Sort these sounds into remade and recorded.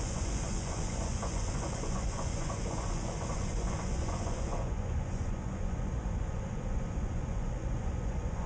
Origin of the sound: remade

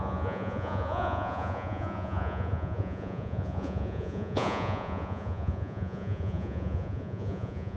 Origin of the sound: remade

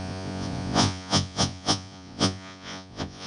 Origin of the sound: remade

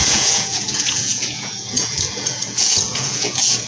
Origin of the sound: remade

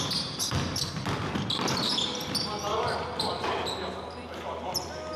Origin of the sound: recorded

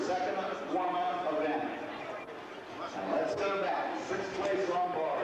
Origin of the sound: recorded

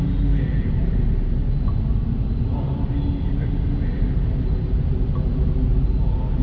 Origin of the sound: recorded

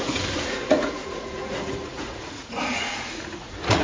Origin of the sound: remade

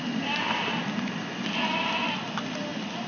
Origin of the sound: recorded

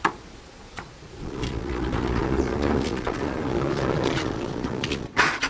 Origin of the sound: remade